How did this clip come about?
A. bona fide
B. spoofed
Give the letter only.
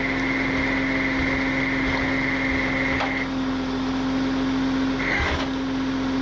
A